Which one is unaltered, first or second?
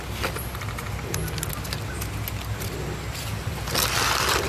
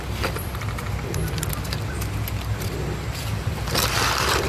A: first